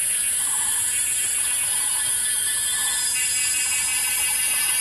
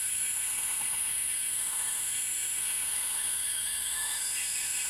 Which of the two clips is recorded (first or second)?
first